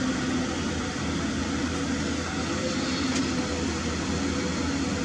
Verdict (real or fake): real